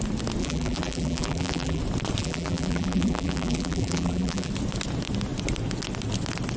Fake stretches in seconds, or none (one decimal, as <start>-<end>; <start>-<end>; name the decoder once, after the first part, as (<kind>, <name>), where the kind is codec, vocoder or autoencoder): 0.4-1.8 (vocoder, BigVGAN v2); 2.2-4.5